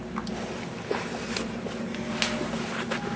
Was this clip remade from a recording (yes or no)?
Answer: no